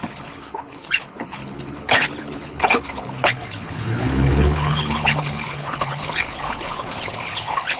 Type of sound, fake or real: fake